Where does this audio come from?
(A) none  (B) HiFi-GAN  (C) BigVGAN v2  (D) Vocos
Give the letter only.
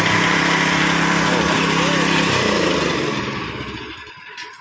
C